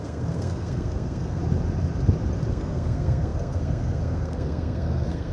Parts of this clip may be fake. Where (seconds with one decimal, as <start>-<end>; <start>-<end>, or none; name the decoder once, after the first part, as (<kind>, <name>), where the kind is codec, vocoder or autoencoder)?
0.0-1.4 (codec, SNAC); 2.5-5.3